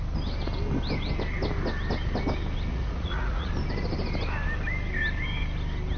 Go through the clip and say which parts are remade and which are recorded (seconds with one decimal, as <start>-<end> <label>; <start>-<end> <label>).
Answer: 0.0-2.7 recorded; 2.7-3.5 remade; 3.5-6.0 recorded